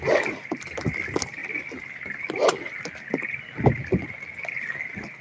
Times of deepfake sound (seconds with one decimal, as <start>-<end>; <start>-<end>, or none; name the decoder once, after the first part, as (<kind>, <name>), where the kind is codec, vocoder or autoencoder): none